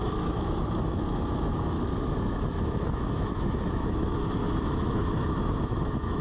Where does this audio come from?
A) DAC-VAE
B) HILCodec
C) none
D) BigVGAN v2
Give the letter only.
A